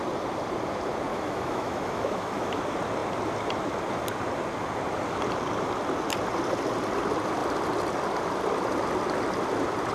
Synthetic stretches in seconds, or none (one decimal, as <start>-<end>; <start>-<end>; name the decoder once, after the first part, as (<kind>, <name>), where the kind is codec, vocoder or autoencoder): 1.1-2.6 (autoencoder, DAC-VAE)